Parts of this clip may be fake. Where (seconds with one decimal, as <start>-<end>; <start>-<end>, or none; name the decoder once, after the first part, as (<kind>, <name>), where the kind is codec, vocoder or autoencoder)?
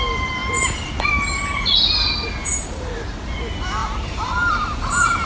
2.4-3.1 (vocoder, BigVGAN v2); 3.8-5.3